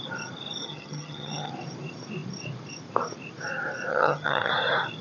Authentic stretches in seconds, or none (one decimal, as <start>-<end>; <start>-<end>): 0.0-0.6; 1.5-3.9; 4.5-5.0